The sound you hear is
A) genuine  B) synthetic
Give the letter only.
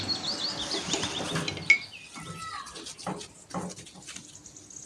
A